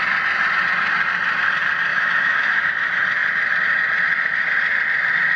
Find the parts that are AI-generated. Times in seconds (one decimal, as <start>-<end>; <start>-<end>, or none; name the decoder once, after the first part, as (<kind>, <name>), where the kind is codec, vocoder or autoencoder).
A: 1.9-2.7 (autoencoder, DAC-VAE)